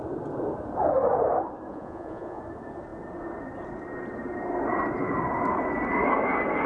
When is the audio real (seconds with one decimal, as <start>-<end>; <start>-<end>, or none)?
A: 0.0-1.7; 2.4-6.7

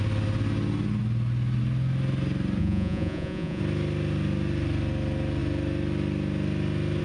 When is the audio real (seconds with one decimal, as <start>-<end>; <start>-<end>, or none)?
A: 0.0-2.6; 3.6-7.0